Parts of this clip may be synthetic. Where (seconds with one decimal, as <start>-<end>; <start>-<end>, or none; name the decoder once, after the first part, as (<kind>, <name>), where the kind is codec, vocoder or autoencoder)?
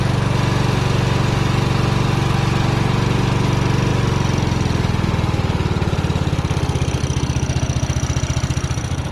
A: none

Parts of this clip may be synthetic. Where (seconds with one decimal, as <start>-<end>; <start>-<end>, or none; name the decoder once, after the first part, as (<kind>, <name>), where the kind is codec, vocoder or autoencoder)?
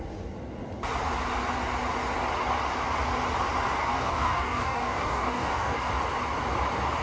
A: 3.8-5.9 (codec, DAC)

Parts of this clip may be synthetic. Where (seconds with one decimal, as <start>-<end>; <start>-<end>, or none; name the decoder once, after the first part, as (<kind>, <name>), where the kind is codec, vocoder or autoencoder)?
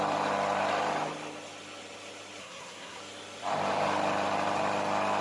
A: 2.4-3.0 (codec, SNAC)